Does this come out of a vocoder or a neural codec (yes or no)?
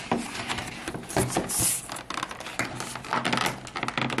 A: no